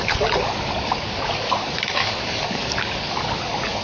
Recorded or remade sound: remade